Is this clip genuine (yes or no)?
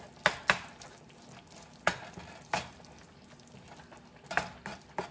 yes